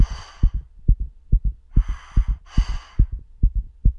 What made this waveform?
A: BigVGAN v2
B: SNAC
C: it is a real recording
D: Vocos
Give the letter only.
C